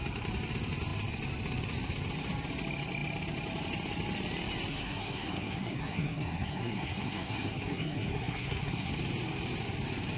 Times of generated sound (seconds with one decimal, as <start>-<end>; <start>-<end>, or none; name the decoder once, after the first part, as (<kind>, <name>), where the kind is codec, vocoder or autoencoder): 4.7-8.9 (codec, SNAC)

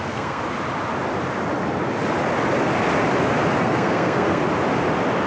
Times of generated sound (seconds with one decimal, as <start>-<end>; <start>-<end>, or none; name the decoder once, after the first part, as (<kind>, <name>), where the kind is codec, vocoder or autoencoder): 0.0-0.4 (codec, SNAC); 3.6-4.4

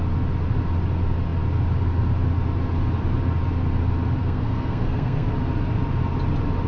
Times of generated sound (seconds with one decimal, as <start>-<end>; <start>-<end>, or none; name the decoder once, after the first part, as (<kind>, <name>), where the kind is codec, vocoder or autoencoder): 4.2-5.3 (codec, SNAC)

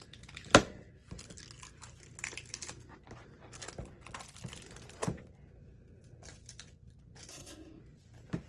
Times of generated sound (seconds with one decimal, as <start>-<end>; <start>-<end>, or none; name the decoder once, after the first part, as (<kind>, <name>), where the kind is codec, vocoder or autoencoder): 7.3-7.8 (codec, SNAC)